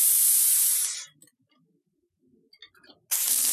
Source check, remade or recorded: recorded